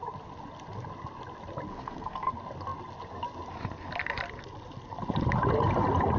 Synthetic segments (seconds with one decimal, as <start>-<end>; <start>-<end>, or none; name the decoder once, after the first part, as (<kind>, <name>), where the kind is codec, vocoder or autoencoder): 1.7-2.3 (codec, SNAC)